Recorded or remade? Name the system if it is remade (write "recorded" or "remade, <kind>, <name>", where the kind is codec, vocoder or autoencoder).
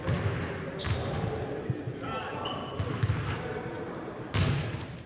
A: recorded